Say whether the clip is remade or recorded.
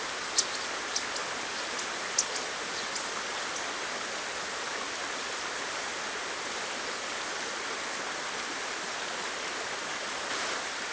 recorded